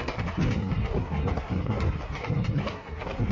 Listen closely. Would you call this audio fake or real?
fake